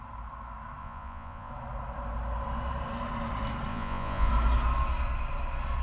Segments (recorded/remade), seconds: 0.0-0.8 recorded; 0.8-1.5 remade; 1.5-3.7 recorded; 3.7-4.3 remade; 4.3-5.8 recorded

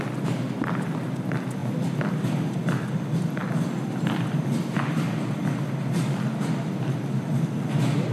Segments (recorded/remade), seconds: 0.0-8.1 recorded

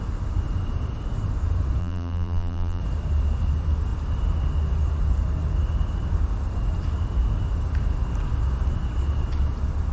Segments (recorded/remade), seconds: 0.0-1.8 recorded; 1.8-2.8 remade; 2.8-9.9 recorded

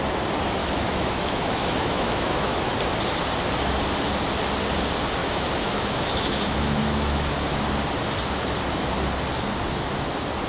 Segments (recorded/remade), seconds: 0.0-0.6 recorded; 0.6-2.8 remade; 2.8-5.2 recorded; 5.2-7.3 remade; 7.3-10.5 recorded

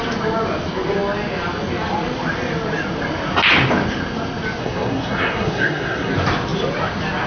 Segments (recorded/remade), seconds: 0.0-4.6 recorded; 4.6-6.1 remade; 6.1-7.3 recorded

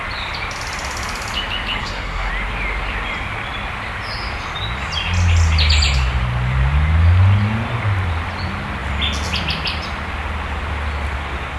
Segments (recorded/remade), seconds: 0.0-1.8 recorded; 1.8-2.3 remade; 2.3-11.6 recorded